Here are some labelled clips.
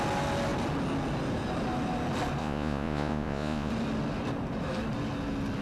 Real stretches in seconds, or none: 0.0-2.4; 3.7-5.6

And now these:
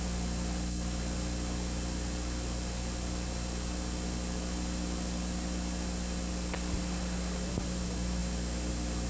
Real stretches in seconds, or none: 0.0-9.1

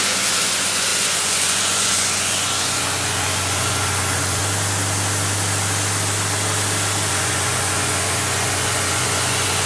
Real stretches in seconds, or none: 4.4-7.1

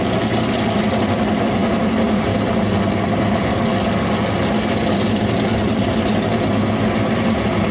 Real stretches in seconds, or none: 0.0-7.7

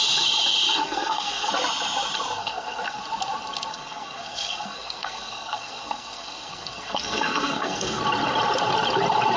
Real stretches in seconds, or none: 0.0-0.8; 1.5-2.4; 3.0-3.7; 8.0-9.4

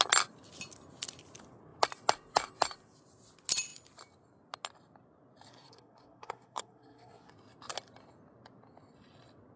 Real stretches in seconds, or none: 0.0-5.5; 7.3-9.6

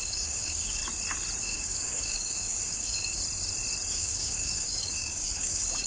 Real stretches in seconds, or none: 0.8-1.4; 3.2-3.9

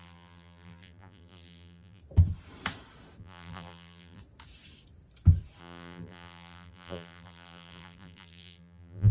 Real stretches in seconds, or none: 2.0-3.2; 4.2-5.6